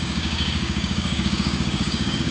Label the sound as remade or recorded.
remade